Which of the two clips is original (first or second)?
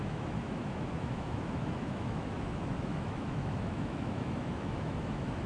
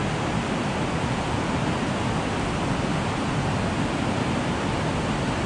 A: second